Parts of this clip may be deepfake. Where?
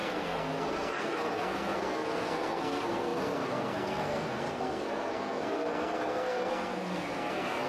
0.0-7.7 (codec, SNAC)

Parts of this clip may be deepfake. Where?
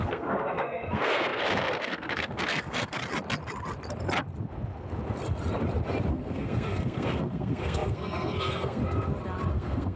0.0-3.0 (codec, SNAC); 6.1-8.8; 9.5-10.0